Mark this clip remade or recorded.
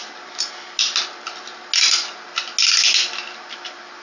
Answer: recorded